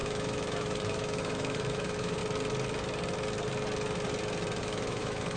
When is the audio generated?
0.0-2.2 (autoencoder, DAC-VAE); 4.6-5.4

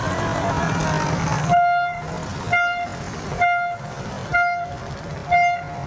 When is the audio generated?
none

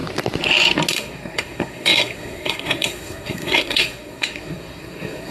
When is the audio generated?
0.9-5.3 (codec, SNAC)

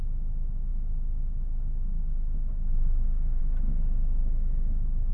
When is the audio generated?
none

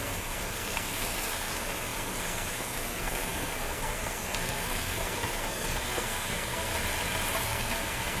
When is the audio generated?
0.0-6.7 (codec, SNAC); 7.4-8.2

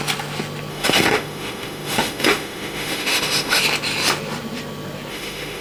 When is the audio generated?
0.7-3.6 (autoencoder, DAC-VAE); 5.1-5.6

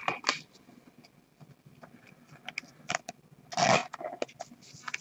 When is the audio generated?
none